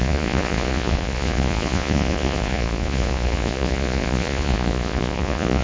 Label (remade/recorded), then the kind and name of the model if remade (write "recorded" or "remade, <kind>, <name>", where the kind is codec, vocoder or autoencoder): remade, vocoder, Vocos